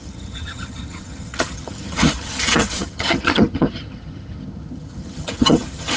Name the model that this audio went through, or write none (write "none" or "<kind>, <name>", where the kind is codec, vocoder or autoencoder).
vocoder, HiFi-GAN